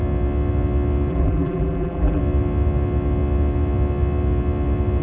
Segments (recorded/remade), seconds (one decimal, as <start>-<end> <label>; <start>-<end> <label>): 0.0-1.1 recorded; 1.1-2.2 remade; 2.2-5.0 recorded